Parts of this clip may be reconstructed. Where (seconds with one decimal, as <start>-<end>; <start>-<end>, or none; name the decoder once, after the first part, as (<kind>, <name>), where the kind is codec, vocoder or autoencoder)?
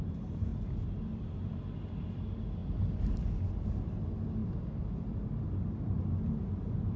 none